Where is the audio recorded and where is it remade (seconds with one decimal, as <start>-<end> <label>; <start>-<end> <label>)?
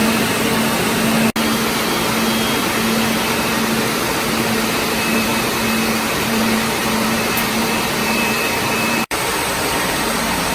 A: 0.0-4.3 recorded; 4.3-5.3 remade; 5.3-6.1 recorded; 6.1-10.5 remade